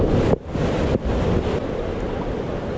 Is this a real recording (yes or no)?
yes